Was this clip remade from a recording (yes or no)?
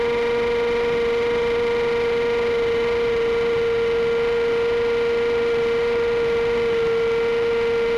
no